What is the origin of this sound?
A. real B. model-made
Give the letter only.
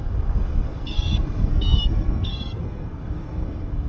B